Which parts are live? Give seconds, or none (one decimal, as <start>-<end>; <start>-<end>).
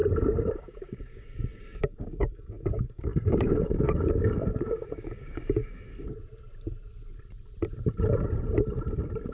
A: 0.0-0.5; 5.9-9.3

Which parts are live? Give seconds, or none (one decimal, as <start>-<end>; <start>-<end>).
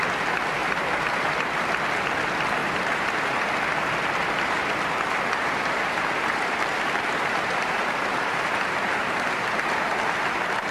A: 0.0-2.6; 3.5-5.4; 9.9-10.7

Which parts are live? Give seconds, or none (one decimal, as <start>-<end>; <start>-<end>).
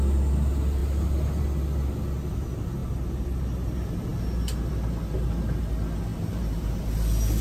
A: 0.0-2.8; 3.4-6.1; 6.8-7.4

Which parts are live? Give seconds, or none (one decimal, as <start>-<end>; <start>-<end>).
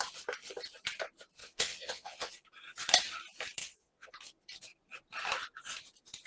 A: 0.0-1.4; 2.3-3.6; 4.1-6.3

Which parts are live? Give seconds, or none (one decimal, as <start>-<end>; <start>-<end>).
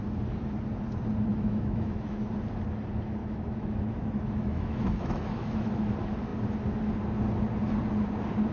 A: 0.0-1.3; 2.3-3.2; 5.7-8.5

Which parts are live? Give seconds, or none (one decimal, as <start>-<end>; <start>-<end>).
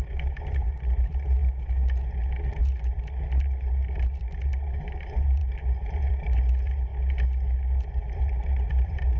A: 1.4-2.6; 6.9-8.0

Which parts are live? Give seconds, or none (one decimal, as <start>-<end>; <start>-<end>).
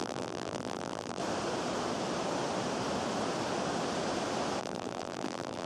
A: 1.2-4.6